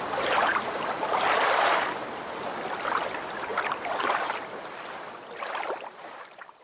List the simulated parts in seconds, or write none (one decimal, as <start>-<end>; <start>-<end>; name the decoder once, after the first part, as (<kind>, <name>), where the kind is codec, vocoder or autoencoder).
0.0-0.5 (vocoder, BigVGAN v2); 1.1-6.6